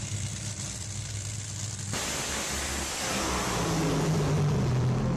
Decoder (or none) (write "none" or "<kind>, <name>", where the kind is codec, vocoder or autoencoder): none